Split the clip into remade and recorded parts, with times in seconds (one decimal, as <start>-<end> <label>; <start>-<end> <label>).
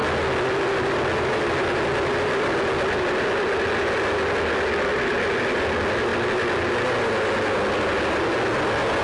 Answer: 0.0-9.0 recorded